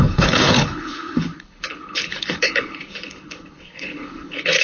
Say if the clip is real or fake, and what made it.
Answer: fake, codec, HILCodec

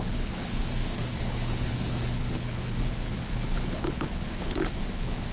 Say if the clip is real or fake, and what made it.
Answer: fake, codec, HILCodec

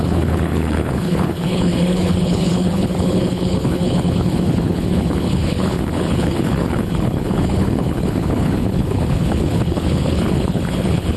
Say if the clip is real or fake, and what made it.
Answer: fake, codec, HILCodec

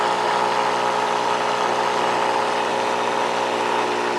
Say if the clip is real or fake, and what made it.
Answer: real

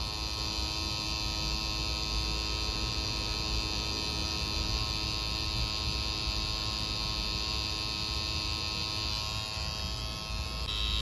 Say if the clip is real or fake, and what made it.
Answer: real